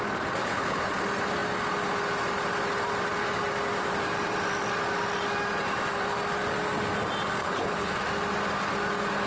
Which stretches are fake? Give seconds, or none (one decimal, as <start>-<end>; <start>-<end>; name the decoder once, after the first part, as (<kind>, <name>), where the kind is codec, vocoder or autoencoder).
0.4-0.9 (codec, HILCodec); 7.4-7.9